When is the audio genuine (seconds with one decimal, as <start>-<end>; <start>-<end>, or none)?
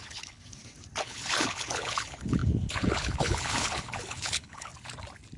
0.4-1.0; 4.7-5.4